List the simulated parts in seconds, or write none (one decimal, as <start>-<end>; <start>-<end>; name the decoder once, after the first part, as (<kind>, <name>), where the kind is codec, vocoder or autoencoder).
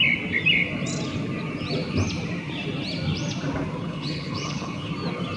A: 3.8-4.9 (codec, HILCodec)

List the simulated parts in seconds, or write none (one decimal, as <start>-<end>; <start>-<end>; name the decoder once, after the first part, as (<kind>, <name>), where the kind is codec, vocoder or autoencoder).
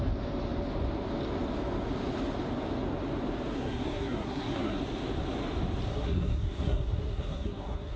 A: 3.5-4.8 (codec, SNAC); 5.9-8.0